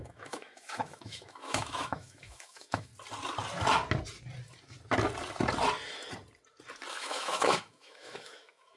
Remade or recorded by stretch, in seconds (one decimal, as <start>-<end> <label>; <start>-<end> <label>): 0.0-2.9 remade; 2.9-6.9 recorded; 6.9-8.8 remade